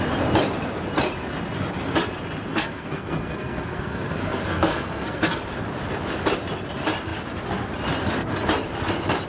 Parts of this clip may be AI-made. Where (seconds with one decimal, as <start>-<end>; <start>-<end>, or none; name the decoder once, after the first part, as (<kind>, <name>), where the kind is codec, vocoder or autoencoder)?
2.5-5.4 (codec, SNAC)